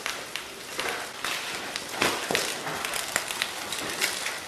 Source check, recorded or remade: recorded